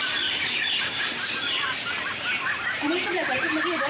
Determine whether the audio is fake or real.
real